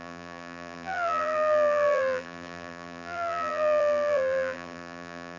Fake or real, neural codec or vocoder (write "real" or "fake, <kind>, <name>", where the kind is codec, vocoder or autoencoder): fake, vocoder, BigVGAN v2